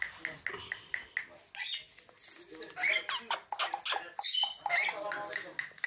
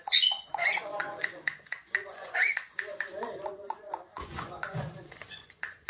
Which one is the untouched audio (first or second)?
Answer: first